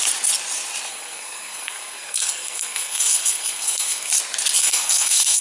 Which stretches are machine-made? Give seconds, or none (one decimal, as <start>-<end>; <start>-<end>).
0.9-4.1; 4.6-5.4

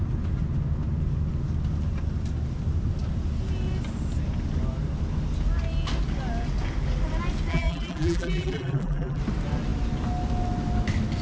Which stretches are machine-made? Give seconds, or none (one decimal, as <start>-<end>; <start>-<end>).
7.5-9.2